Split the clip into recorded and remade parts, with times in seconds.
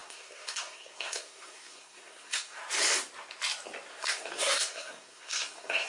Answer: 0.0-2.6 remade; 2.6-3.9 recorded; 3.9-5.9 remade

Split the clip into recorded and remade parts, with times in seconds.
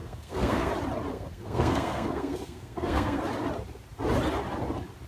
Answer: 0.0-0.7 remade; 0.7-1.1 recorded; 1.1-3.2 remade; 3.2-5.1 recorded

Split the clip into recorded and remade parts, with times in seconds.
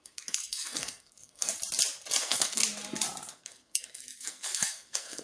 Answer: 0.0-1.5 remade; 1.5-2.2 recorded; 2.2-2.6 remade; 2.6-3.3 recorded; 3.3-5.2 remade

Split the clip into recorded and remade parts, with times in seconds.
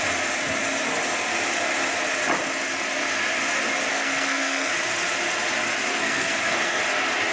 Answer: 0.0-3.9 recorded; 3.9-4.7 remade; 4.7-5.9 recorded; 5.9-6.8 remade; 6.8-7.3 recorded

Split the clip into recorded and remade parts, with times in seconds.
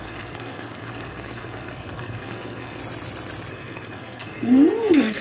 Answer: 0.0-2.8 remade; 2.8-3.5 recorded; 3.5-5.2 remade